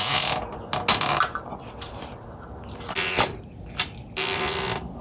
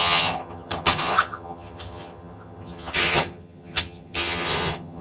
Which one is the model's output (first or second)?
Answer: second